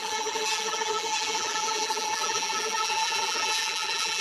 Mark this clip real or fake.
fake